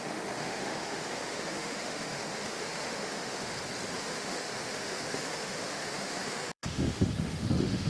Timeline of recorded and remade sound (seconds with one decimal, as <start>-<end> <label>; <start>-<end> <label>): 0.0-3.5 remade; 3.5-4.0 recorded; 4.0-7.9 remade